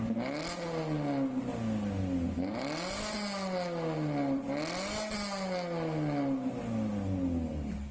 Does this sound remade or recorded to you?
recorded